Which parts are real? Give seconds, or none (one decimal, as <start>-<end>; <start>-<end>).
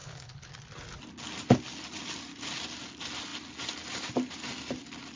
0.5-5.2